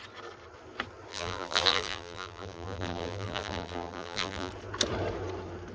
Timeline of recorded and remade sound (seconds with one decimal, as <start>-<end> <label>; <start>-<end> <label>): 0.0-1.1 recorded; 1.1-4.5 remade; 4.5-5.7 recorded